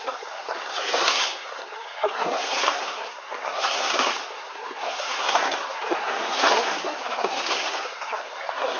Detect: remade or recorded remade